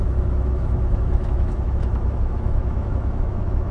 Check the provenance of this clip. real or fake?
fake